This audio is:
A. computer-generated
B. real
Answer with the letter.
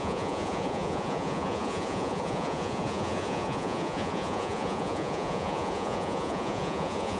A